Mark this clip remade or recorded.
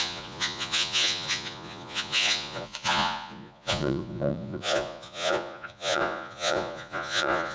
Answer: remade